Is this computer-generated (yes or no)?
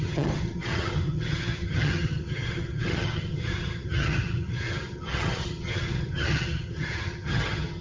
yes